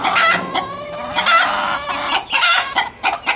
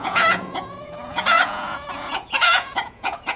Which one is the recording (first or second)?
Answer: first